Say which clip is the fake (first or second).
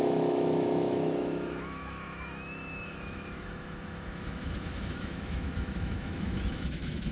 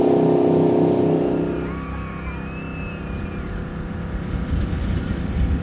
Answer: first